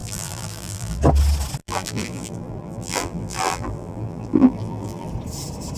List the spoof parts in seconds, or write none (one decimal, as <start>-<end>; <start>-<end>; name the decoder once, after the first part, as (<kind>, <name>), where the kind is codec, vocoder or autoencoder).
0.0-1.0 (vocoder, BigVGAN v2); 1.6-5.1